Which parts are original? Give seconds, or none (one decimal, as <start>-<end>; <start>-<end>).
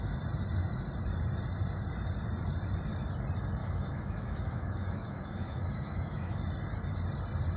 0.0-3.6; 6.4-7.6